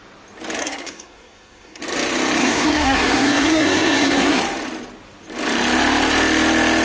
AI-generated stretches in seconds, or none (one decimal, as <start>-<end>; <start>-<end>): 0.6-1.8; 2.4-4.4